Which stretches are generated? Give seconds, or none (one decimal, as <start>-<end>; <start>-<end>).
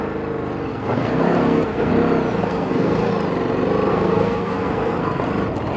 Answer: 0.7-1.9; 2.4-3.1; 3.9-5.2